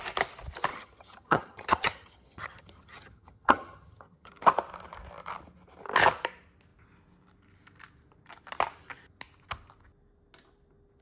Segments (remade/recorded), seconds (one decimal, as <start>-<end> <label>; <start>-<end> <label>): 0.0-0.7 recorded; 0.7-4.3 remade; 4.3-11.0 recorded